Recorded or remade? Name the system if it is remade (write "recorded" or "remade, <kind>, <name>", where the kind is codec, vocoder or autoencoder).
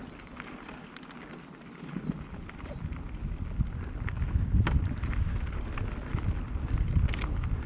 recorded